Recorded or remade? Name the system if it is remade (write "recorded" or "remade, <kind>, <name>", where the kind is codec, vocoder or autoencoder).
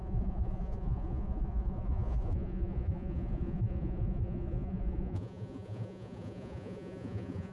remade, vocoder, Vocos